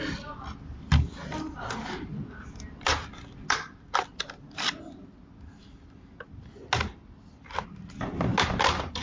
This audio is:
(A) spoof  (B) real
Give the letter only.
B